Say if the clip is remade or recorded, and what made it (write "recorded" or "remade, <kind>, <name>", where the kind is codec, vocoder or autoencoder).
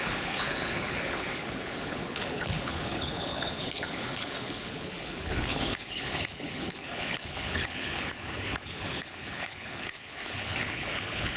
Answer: remade, codec, HILCodec